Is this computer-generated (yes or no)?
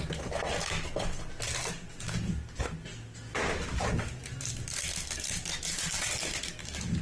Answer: no